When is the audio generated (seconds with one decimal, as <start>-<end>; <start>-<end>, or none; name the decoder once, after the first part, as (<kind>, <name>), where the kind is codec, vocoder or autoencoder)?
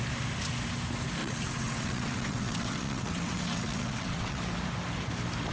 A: 1.2-4.4 (vocoder, WaveNeXt)